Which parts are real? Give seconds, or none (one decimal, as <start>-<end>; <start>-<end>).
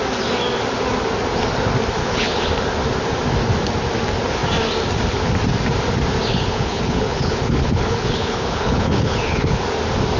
0.0-2.0; 2.5-6.3; 9.6-10.2